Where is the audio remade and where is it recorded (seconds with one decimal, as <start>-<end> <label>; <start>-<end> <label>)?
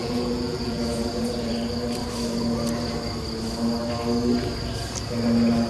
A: 0.0-1.5 remade; 1.5-5.7 recorded